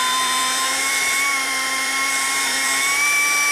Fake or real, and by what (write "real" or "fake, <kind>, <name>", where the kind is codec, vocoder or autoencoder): fake, vocoder, BigVGAN v2